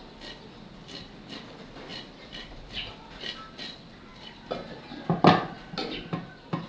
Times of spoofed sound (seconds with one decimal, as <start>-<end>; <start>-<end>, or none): none